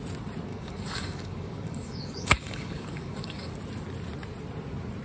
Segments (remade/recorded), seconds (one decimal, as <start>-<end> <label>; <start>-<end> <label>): 0.0-0.5 recorded; 0.5-3.5 remade; 3.5-5.0 recorded